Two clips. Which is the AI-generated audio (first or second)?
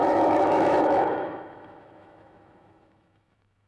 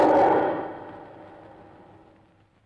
first